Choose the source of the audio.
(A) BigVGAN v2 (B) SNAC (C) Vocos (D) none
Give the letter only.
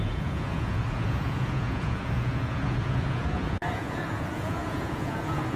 C